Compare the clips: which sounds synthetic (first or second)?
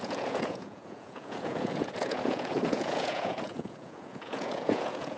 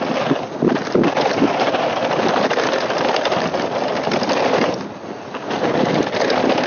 first